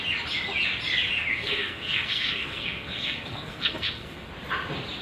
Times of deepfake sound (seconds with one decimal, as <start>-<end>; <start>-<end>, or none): 1.3-4.3

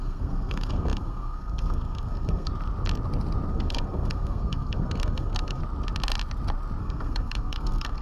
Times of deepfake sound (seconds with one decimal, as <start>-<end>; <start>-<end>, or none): 0.0-2.5; 3.5-5.6; 6.8-8.0

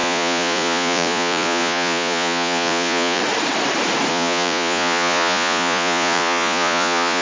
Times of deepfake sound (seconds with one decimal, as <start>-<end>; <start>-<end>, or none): 0.0-3.2; 4.1-7.2

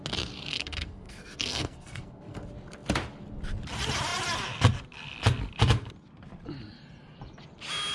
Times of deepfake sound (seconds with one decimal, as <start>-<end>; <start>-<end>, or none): 0.5-2.4

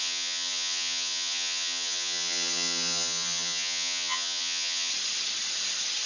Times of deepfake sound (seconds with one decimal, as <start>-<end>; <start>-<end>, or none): 0.0-4.9